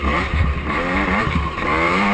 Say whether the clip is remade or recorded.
remade